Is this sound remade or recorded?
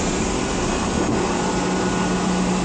recorded